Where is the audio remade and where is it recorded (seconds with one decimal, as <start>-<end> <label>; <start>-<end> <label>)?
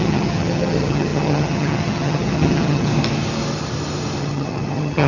0.0-2.9 remade; 2.9-4.2 recorded; 4.2-5.1 remade